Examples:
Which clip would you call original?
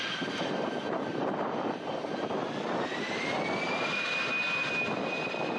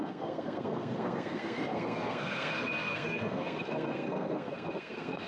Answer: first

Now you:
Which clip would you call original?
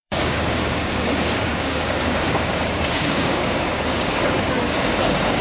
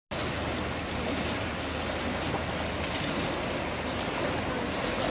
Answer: second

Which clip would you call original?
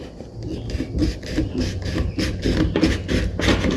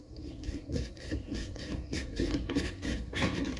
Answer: first